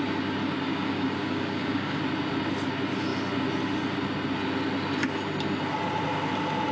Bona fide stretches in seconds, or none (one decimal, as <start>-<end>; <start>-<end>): 0.0-0.4; 2.0-6.7